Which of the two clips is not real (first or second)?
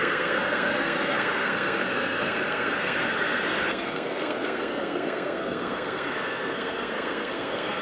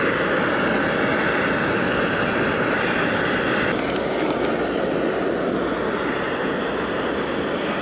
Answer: first